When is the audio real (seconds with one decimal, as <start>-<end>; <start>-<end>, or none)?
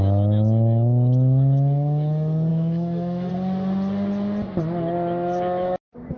0.0-2.5; 3.3-6.2